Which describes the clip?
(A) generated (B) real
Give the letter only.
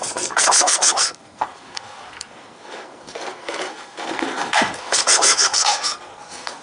A